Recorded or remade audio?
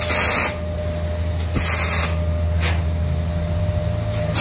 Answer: recorded